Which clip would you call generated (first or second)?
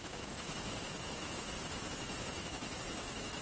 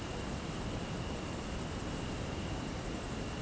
first